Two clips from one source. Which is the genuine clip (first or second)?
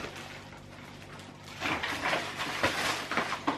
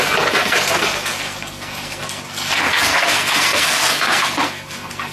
first